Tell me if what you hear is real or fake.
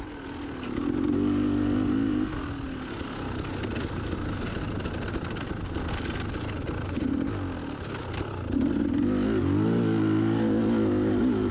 real